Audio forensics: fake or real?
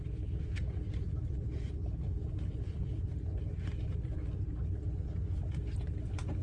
fake